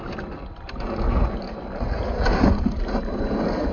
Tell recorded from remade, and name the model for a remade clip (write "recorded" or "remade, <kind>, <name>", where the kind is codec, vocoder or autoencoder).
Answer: recorded